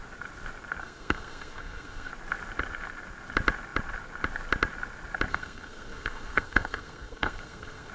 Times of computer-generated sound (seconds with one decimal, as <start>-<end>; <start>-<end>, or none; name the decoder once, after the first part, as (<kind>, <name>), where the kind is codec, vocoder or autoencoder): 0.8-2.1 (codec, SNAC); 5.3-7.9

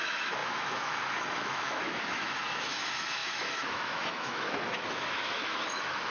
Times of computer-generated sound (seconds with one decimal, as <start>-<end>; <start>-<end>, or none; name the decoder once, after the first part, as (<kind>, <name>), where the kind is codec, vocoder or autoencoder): 0.0-6.1 (autoencoder, DAC-VAE)

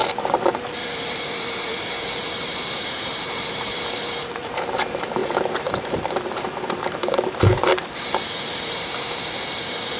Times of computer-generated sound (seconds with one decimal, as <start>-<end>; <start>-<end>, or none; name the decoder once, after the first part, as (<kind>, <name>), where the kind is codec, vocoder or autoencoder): 0.0-10.0 (vocoder, BigVGAN v2)

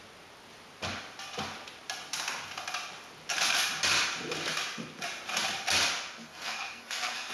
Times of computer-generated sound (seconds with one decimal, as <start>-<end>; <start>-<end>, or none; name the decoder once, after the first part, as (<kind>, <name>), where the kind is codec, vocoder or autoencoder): 6.2-7.3 (codec, SNAC)

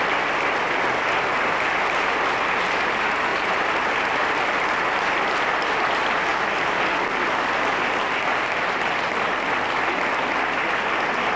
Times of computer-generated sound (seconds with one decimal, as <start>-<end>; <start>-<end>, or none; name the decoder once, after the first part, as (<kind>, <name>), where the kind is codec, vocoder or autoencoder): 3.3-3.8 (vocoder, BigVGAN v2); 4.2-4.8; 6.3-9.5

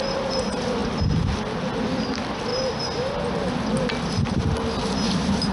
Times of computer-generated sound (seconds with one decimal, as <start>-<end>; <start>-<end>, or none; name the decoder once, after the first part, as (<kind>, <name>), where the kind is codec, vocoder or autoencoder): none

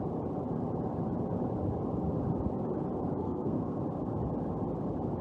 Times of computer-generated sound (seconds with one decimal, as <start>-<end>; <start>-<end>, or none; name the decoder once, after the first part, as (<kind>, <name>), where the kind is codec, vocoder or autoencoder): 3.2-3.8 (codec, SNAC)

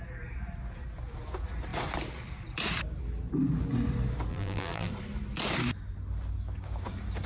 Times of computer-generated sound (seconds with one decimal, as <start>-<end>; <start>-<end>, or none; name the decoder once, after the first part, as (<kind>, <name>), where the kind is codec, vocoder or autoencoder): 4.3-4.9 (vocoder, BigVGAN v2)